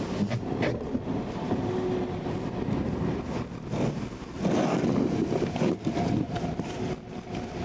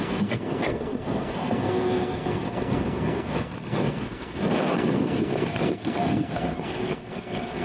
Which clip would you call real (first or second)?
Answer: first